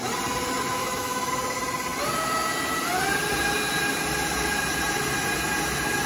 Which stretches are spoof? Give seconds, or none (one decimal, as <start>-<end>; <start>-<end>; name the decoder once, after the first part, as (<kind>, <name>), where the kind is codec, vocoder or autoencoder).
0.8-1.3 (autoencoder, DAC-VAE)